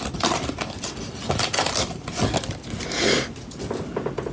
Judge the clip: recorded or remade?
recorded